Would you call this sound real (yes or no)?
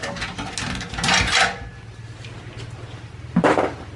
yes